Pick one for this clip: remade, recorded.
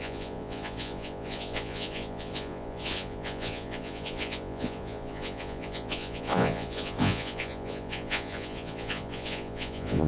remade